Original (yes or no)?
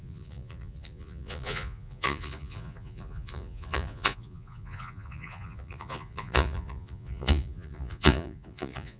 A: no